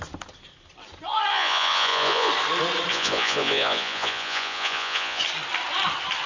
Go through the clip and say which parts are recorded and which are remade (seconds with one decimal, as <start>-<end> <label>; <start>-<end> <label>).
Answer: 0.0-1.3 recorded; 1.3-2.3 remade; 2.3-2.9 recorded; 2.9-5.2 remade; 5.2-6.3 recorded